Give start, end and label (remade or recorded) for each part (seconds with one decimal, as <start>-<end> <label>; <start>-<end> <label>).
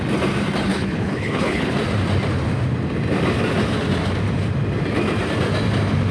0.0-0.7 recorded; 0.7-1.7 remade; 1.7-6.1 recorded